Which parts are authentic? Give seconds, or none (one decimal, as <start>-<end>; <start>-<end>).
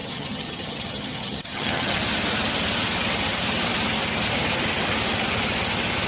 2.0-6.1